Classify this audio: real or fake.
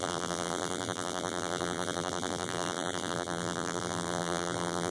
fake